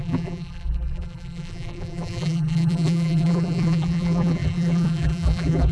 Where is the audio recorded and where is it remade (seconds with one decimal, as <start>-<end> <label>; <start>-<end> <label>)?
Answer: 0.0-5.7 remade